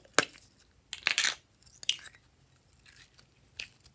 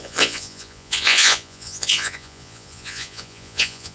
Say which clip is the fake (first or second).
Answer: second